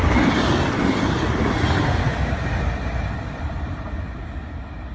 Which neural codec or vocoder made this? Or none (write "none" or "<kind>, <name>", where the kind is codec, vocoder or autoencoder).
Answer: none